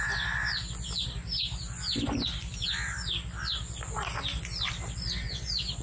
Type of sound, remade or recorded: recorded